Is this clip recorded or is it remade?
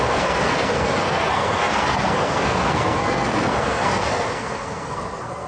remade